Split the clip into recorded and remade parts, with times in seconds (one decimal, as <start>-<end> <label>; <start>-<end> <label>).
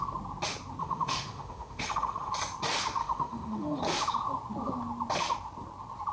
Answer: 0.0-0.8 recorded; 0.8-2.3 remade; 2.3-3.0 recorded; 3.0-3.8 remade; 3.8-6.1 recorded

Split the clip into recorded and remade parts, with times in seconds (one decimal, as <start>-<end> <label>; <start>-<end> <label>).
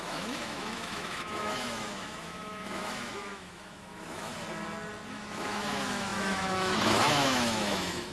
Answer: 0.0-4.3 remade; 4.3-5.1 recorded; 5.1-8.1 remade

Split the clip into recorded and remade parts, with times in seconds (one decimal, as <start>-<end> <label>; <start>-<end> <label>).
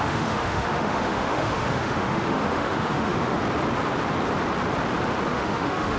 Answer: 0.0-3.4 remade; 3.4-5.3 recorded; 5.3-6.0 remade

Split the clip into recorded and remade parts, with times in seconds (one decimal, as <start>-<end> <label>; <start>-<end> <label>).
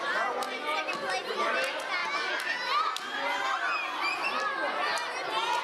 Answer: 0.0-5.6 recorded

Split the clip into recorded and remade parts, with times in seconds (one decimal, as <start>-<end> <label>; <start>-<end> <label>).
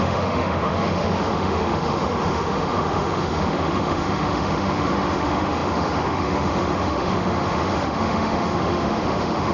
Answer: 0.0-9.5 remade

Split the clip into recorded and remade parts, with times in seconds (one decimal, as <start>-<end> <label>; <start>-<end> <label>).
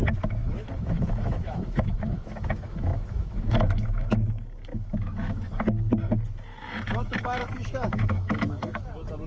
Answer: 0.0-0.4 recorded; 0.4-5.5 remade; 5.5-6.5 recorded; 6.5-8.8 remade; 8.8-9.3 recorded